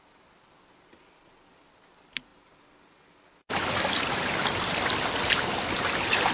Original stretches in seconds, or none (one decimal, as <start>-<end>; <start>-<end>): 0.0-6.3

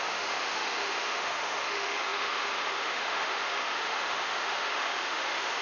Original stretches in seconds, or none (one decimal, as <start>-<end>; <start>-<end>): none

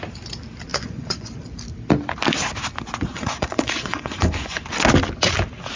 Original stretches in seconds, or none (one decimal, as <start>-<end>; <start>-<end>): 0.0-0.7; 1.3-3.1; 4.6-5.8